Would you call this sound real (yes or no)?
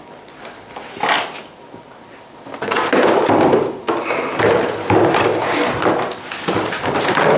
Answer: yes